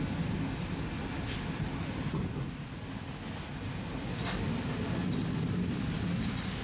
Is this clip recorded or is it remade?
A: recorded